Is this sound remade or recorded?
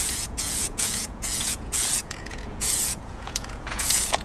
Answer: remade